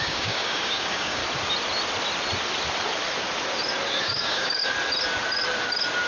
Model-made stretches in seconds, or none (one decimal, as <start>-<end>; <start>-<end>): 0.0-1.2; 4.0-4.6